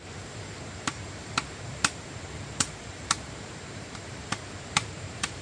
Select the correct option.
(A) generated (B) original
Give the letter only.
A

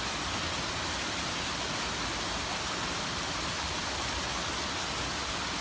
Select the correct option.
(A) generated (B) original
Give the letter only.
B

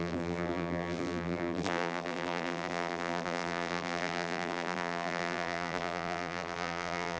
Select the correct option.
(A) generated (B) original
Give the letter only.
A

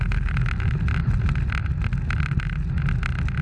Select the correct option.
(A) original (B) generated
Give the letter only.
A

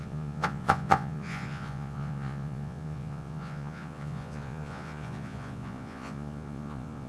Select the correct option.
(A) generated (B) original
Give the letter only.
A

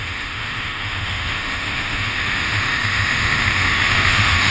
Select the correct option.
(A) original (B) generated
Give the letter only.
B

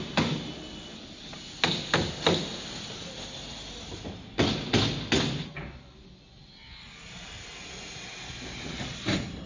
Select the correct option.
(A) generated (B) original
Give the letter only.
B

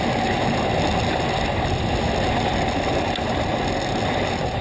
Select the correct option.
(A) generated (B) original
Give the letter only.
B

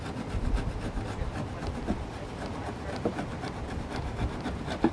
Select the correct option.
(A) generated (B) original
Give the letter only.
B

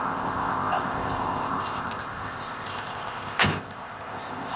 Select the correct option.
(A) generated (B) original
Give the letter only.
A